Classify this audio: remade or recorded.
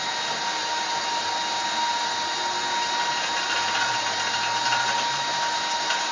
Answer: recorded